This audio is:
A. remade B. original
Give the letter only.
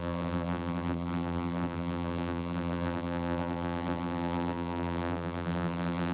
A